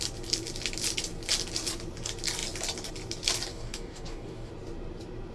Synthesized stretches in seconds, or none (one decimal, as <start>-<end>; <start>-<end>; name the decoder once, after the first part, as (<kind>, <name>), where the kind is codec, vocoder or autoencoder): 3.5-4.5 (codec, DAC)